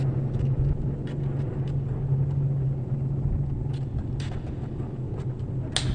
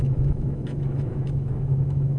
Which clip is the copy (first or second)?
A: second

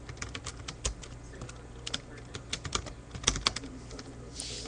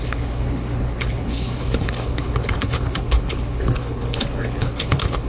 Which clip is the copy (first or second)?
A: second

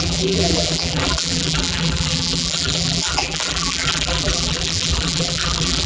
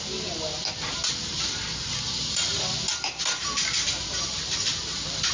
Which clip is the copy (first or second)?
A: first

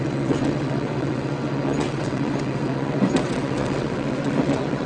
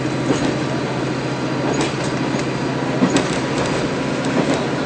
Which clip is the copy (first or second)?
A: first